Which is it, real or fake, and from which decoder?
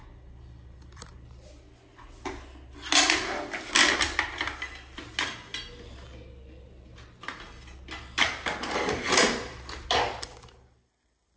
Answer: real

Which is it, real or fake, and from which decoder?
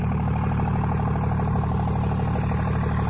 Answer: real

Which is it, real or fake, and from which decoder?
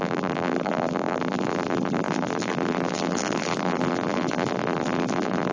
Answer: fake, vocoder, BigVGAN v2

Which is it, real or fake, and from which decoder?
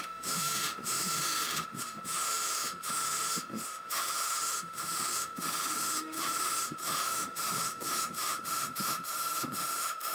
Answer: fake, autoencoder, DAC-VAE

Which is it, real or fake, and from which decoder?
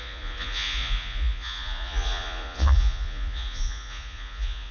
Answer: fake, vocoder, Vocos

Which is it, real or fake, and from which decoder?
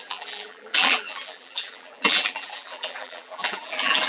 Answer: fake, vocoder, BigVGAN v2